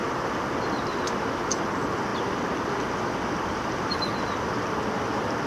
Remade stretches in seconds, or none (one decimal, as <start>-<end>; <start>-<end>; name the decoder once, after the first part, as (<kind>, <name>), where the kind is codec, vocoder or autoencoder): none